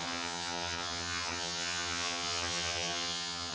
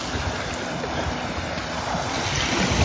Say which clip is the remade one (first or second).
first